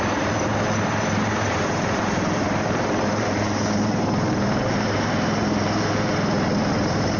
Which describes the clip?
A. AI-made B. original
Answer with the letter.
A